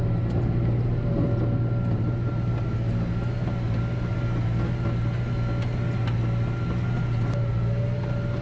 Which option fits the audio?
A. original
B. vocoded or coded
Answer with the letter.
A